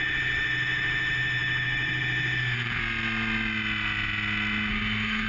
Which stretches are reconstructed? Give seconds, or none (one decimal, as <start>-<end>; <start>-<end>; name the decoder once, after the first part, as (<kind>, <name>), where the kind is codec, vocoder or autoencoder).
0.0-2.8 (autoencoder, DAC-VAE); 4.7-5.3